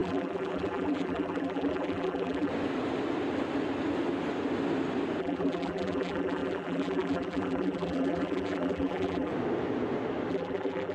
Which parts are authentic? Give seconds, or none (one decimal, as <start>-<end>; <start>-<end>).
2.5-5.2; 9.3-10.3